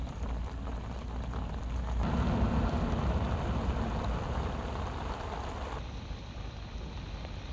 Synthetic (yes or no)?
no